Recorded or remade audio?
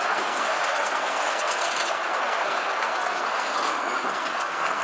remade